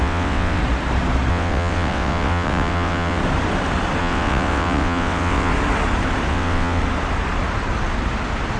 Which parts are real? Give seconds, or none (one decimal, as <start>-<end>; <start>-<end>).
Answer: 0.6-1.3; 3.2-4.0; 5.5-6.3; 6.8-8.6